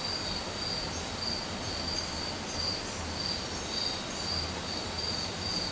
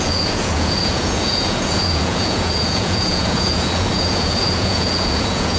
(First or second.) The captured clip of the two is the first